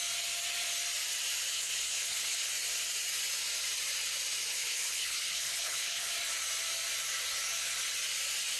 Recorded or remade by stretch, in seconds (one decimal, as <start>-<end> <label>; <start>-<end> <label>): 0.0-1.5 recorded; 1.5-2.5 remade; 2.5-4.5 recorded; 4.5-6.1 remade; 6.1-8.6 recorded